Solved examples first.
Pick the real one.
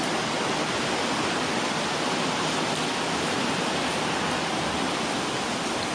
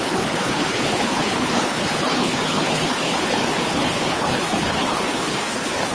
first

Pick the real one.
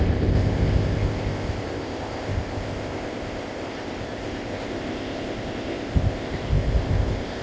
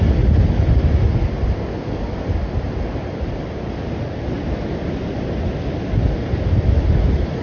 second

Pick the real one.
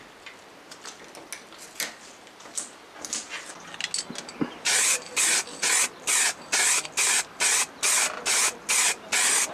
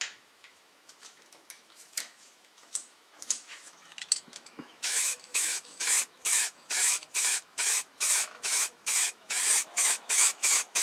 first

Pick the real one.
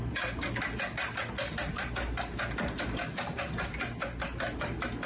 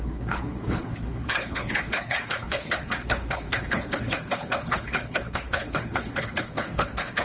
first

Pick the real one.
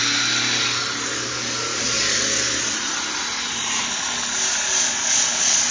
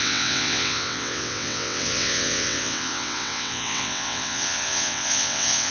first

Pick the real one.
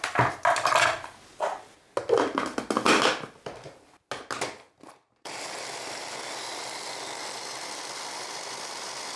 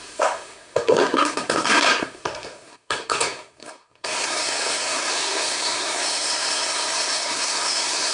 first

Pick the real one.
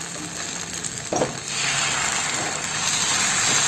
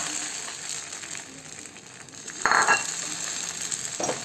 second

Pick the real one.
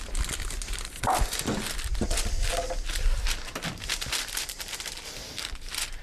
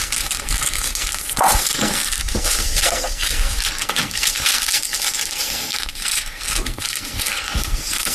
first